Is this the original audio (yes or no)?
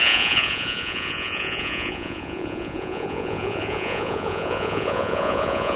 no